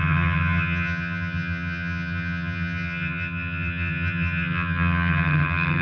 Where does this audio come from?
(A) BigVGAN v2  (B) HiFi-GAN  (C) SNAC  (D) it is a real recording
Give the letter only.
B